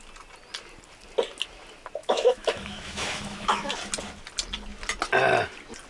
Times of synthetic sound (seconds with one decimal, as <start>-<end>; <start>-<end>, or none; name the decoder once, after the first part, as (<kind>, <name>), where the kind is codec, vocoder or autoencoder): 2.0-3.7 (autoencoder, DAC-VAE)